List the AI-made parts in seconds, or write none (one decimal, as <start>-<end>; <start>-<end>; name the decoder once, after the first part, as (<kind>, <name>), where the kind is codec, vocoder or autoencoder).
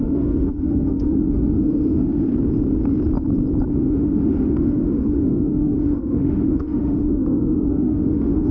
0.0-2.3 (autoencoder, DAC-VAE); 3.7-8.5